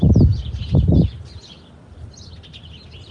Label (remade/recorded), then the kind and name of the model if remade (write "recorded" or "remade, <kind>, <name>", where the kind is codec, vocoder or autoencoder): recorded